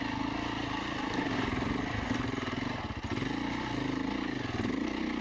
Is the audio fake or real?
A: real